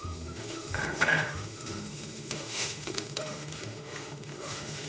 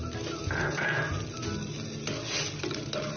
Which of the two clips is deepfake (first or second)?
first